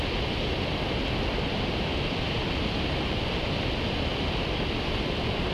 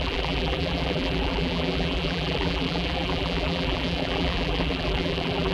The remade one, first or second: second